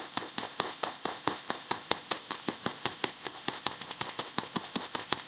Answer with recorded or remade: remade